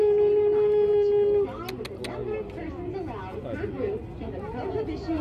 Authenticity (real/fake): real